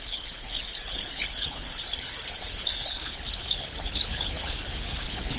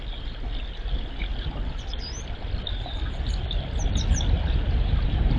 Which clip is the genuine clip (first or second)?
second